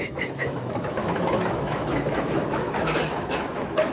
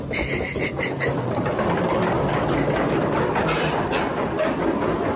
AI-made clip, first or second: first